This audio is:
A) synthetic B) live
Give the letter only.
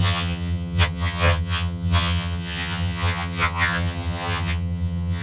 A